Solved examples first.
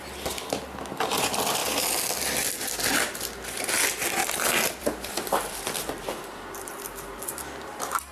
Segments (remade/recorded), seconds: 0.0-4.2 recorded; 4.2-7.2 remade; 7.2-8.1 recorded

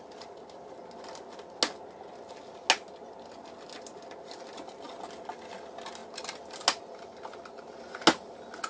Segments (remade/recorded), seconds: 0.0-8.7 recorded